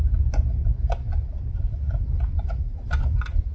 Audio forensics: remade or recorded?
recorded